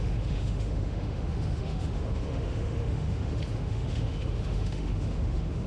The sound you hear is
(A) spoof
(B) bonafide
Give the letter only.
A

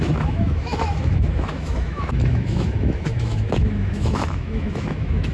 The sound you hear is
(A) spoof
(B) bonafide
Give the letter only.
A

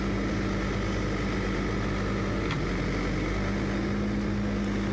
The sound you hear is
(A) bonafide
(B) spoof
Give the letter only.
A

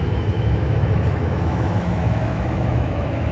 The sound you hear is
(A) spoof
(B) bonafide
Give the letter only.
A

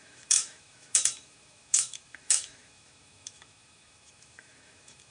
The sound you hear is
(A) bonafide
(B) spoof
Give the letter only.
B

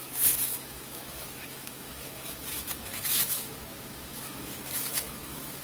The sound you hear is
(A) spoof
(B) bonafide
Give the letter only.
A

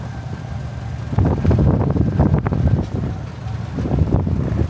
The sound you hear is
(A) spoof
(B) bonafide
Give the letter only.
B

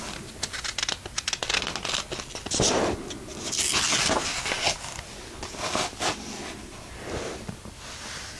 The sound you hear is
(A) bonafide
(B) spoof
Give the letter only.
A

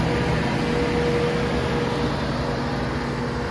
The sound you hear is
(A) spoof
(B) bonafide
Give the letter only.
B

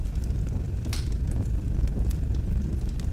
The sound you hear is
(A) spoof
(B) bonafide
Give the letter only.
B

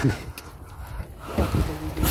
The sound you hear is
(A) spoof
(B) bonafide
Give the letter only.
B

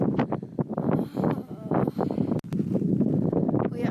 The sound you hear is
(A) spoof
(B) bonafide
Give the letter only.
B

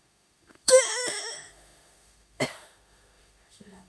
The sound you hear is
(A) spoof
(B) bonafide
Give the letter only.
A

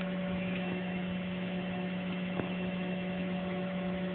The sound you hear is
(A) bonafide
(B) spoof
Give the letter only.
B